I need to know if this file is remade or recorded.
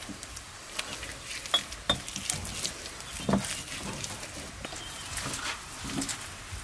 recorded